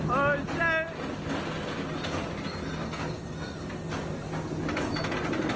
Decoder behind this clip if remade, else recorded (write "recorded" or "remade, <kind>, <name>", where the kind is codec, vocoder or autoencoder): recorded